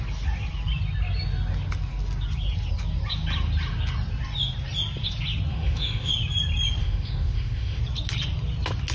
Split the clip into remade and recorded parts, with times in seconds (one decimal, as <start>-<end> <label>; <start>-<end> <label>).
0.0-5.5 recorded; 5.5-6.1 remade; 6.1-6.8 recorded; 6.8-7.8 remade; 7.8-8.9 recorded